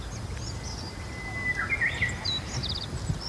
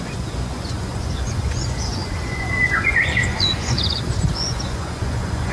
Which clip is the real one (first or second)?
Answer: first